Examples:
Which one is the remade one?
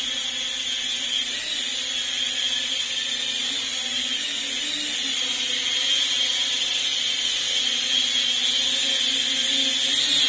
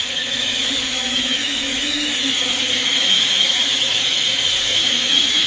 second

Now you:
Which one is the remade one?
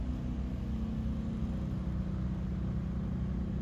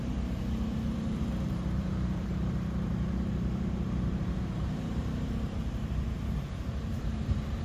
second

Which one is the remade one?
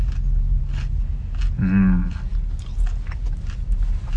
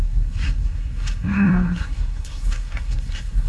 second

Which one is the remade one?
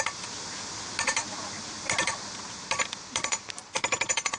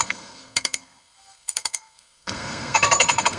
second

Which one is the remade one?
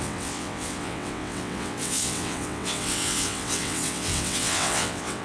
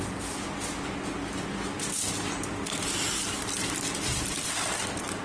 first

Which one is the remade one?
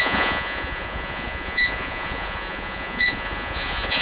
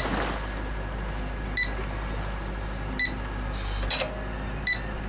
first